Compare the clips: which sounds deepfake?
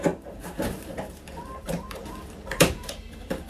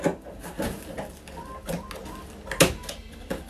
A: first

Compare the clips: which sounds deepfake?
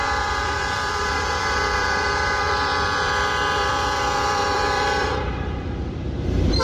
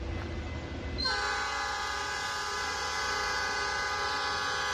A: first